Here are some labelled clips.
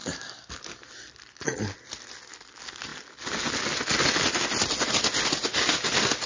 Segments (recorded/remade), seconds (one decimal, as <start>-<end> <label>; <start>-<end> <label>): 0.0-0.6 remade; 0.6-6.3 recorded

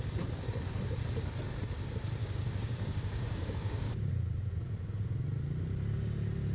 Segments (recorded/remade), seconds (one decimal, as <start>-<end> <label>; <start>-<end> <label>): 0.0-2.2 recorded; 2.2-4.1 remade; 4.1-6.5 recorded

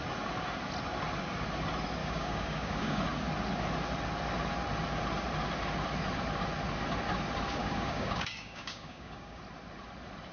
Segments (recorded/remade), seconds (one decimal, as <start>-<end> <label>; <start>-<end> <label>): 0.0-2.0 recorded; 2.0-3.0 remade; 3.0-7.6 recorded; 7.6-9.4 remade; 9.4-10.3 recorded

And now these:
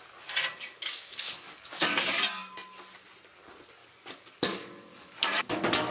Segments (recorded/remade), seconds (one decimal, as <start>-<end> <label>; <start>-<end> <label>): 0.0-0.4 recorded; 0.4-2.2 remade; 2.2-3.8 recorded; 3.8-5.9 remade

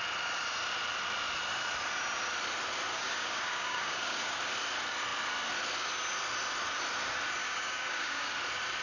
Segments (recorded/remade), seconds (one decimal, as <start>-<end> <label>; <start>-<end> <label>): 0.0-2.9 recorded; 2.9-4.4 remade; 4.4-7.4 recorded; 7.4-8.3 remade; 8.3-8.8 recorded